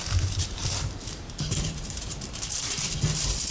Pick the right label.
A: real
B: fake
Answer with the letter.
B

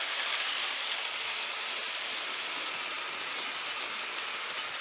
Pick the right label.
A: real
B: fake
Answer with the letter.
A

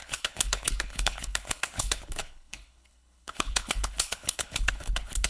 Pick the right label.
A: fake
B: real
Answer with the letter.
A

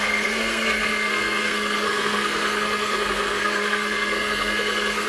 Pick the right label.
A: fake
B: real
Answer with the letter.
A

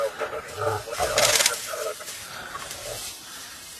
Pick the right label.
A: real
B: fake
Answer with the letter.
A